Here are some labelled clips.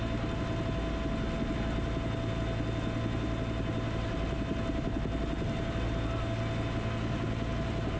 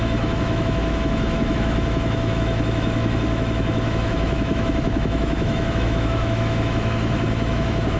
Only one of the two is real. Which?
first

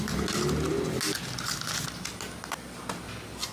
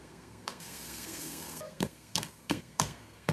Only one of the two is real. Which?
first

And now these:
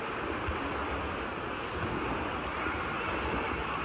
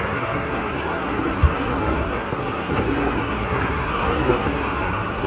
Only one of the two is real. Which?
first